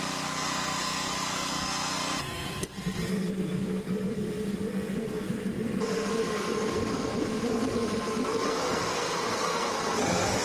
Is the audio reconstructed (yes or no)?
yes